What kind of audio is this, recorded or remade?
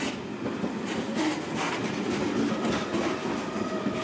recorded